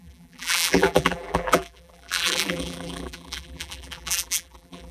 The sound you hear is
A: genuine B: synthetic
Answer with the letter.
B